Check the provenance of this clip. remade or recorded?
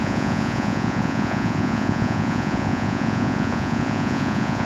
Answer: remade